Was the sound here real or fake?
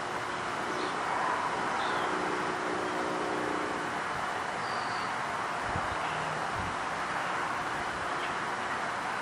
real